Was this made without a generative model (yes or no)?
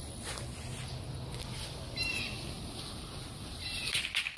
yes